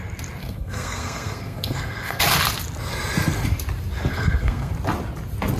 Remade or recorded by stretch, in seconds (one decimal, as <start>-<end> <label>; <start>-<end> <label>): 0.0-0.4 recorded; 0.4-2.2 remade; 2.2-4.1 recorded; 4.1-4.7 remade; 4.7-5.6 recorded